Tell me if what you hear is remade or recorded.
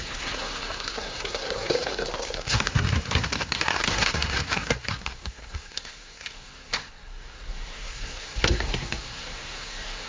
remade